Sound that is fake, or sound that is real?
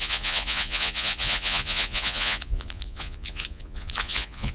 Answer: fake